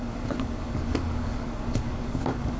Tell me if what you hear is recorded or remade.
remade